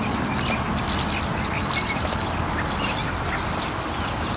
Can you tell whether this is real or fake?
real